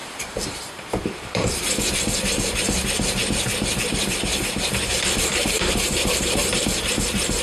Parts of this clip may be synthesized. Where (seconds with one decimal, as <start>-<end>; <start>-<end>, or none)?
0.0-7.4